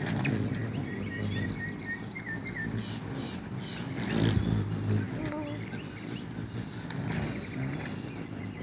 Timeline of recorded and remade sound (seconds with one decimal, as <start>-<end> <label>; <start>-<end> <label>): 0.0-8.6 recorded